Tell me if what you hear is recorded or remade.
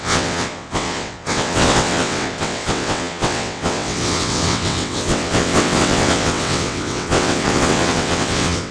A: remade